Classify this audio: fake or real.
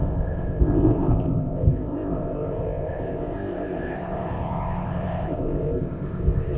fake